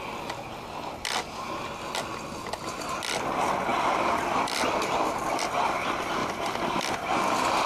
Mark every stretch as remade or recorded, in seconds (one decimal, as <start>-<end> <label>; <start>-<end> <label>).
0.0-7.7 recorded